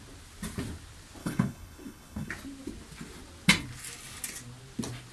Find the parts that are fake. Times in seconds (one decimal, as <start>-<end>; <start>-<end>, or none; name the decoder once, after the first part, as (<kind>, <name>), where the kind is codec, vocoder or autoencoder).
1.2-2.3 (codec, HILCodec)